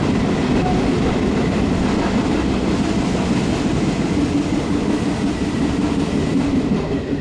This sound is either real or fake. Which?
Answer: real